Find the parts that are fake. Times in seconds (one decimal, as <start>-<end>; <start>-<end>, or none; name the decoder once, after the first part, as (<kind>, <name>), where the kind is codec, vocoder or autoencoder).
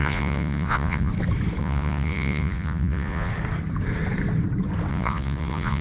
0.0-1.1 (vocoder, Vocos); 1.6-3.3; 4.9-5.8